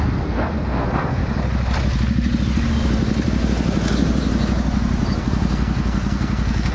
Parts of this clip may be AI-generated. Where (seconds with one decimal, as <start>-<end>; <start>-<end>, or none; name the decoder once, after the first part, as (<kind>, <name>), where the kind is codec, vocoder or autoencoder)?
0.0-1.2 (codec, SNAC); 5.2-6.7